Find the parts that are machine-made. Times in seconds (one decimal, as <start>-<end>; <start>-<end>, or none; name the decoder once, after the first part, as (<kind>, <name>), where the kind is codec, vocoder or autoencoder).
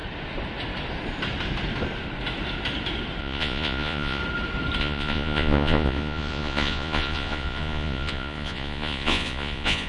3.2-4.2 (vocoder, Vocos); 4.8-9.9